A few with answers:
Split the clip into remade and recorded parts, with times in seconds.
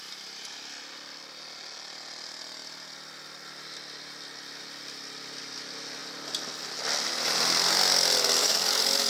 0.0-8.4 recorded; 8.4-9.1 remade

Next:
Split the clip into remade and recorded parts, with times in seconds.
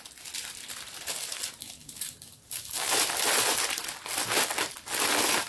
0.0-1.6 recorded; 1.6-3.0 remade; 3.0-5.5 recorded